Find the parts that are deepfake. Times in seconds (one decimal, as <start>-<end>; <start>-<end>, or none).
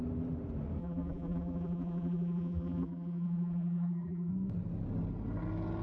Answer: 0.8-4.3